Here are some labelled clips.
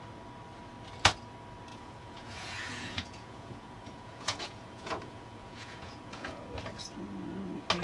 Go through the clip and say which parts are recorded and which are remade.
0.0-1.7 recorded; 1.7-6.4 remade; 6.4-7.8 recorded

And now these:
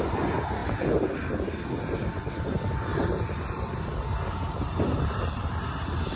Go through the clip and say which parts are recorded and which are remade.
0.0-0.6 recorded; 0.6-1.2 remade; 1.2-2.9 recorded; 2.9-5.6 remade; 5.6-6.2 recorded

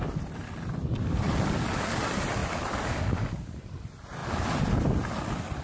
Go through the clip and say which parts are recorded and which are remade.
0.0-5.6 recorded

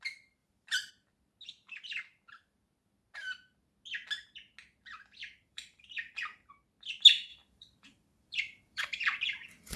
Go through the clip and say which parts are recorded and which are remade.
0.0-0.4 recorded; 0.4-0.9 remade; 0.9-5.2 recorded; 5.2-6.5 remade; 6.5-7.3 recorded; 7.3-9.8 remade

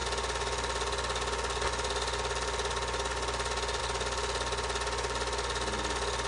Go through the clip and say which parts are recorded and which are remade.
0.0-6.3 recorded

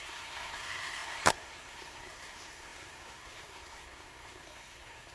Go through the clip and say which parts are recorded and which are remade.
0.0-5.1 remade